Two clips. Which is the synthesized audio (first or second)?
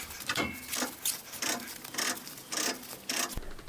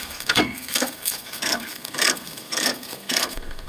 second